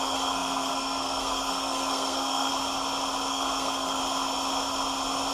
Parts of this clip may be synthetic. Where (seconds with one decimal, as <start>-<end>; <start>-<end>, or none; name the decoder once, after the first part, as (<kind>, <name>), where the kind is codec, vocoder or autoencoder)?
0.0-2.5 (codec, SNAC); 3.3-4.0

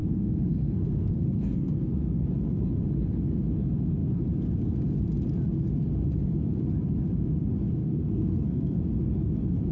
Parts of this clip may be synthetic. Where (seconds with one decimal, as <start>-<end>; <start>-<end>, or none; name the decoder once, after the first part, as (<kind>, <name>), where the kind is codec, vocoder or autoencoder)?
0.0-2.2 (codec, SNAC); 7.8-8.8

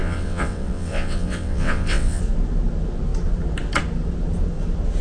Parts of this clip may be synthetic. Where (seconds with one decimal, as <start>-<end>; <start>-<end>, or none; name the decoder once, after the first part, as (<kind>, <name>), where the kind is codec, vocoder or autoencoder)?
0.0-2.2 (vocoder, WaveNeXt)